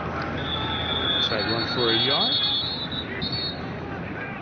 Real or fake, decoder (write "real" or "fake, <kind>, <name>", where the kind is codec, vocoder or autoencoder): real